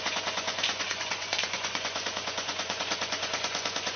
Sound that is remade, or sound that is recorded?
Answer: remade